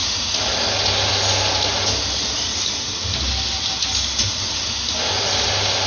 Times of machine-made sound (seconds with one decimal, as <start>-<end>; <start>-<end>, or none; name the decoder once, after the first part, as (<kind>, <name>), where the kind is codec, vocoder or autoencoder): none